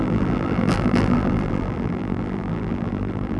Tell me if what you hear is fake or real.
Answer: fake